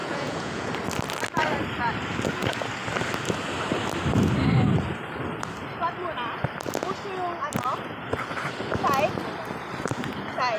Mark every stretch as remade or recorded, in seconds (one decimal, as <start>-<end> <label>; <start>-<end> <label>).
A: 0.0-0.7 remade; 0.7-10.6 recorded